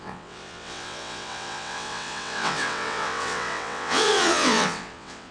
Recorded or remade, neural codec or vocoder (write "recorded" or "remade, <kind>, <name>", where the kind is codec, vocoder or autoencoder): remade, vocoder, WaveNeXt